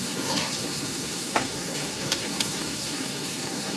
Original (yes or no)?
no